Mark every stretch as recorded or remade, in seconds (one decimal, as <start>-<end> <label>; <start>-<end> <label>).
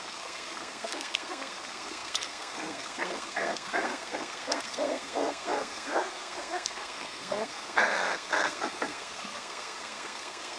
0.0-10.6 remade